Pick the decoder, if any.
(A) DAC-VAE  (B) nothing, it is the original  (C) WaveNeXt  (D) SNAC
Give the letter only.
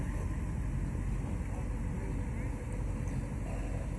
B